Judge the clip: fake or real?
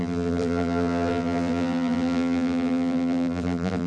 fake